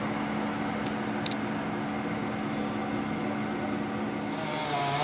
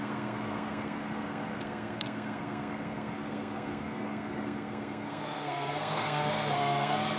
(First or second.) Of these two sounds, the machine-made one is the second